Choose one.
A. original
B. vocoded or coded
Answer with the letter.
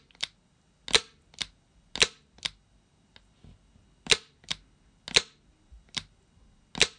A